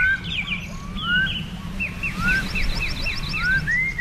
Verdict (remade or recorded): recorded